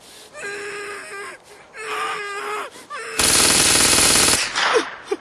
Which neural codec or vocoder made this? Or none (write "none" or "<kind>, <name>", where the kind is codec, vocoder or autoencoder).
none